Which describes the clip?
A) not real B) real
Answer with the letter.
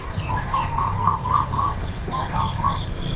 A